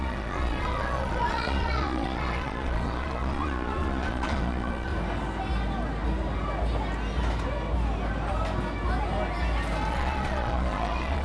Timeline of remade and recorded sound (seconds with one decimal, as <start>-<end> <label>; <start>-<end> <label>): 0.0-4.9 remade; 4.9-9.9 recorded; 9.9-11.2 remade